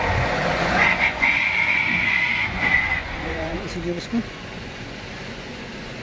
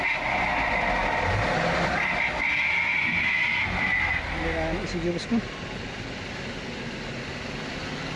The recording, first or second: second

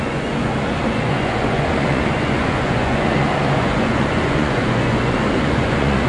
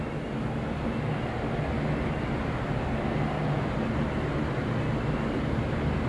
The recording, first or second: second